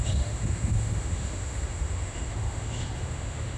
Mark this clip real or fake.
fake